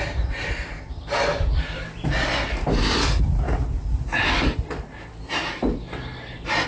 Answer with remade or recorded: recorded